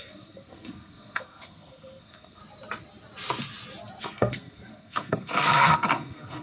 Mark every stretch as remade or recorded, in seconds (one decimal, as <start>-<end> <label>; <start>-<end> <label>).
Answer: 0.0-2.4 remade; 2.4-4.0 recorded; 4.0-6.4 remade